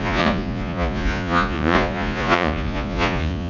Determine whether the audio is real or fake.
fake